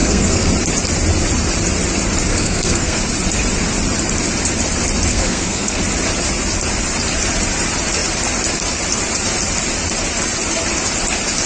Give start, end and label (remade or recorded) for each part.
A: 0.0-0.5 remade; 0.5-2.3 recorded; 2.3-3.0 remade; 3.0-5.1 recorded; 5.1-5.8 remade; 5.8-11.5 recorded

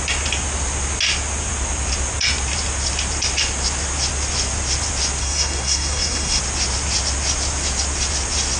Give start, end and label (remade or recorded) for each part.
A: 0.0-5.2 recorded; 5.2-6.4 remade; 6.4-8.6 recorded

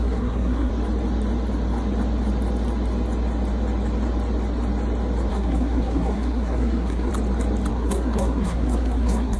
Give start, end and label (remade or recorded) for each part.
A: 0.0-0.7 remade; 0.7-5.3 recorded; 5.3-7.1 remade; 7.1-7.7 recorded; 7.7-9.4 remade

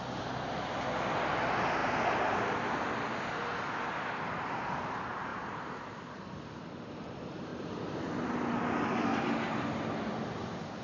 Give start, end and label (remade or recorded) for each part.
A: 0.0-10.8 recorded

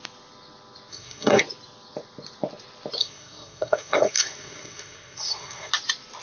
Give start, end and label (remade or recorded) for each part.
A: 0.0-0.9 recorded; 0.9-1.4 remade; 1.4-3.0 recorded; 3.0-5.7 remade; 5.7-6.2 recorded

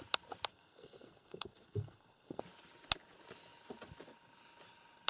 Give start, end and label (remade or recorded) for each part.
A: 0.0-0.5 recorded; 0.5-2.4 remade; 2.4-5.1 recorded